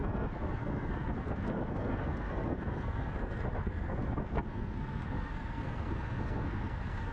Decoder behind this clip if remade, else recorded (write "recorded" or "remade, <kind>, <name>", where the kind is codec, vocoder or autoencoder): remade, codec, SNAC